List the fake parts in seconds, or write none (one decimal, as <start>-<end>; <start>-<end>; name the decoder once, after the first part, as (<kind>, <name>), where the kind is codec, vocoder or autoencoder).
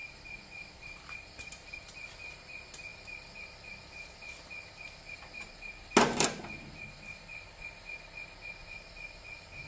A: none